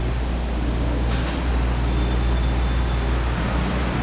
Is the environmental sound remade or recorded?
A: recorded